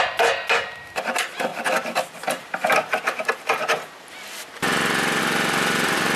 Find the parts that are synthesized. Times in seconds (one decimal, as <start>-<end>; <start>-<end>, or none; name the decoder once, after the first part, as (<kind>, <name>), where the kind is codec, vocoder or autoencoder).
none